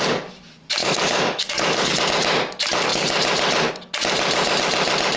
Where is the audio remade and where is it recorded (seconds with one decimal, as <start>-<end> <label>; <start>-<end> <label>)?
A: 0.0-0.8 recorded; 0.8-1.9 remade; 1.9-5.2 recorded